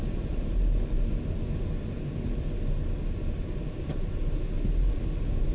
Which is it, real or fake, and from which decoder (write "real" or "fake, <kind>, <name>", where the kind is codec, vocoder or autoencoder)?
real